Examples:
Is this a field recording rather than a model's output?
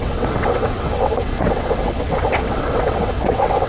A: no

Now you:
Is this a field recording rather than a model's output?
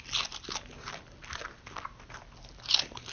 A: yes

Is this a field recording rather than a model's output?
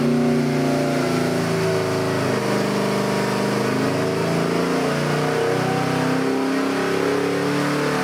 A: yes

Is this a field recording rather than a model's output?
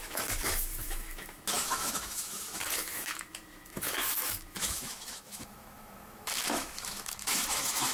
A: no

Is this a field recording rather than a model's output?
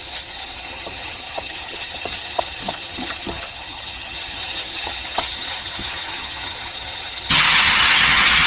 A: no